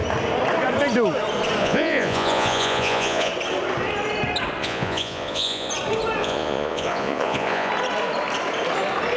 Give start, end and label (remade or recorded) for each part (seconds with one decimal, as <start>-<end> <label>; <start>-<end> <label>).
0.0-1.6 recorded; 1.6-3.3 remade; 3.3-4.6 recorded; 4.6-5.7 remade; 5.7-6.2 recorded; 6.2-7.7 remade; 7.7-9.2 recorded